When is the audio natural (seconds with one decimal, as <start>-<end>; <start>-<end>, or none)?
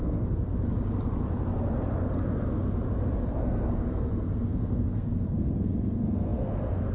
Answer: 0.5-3.4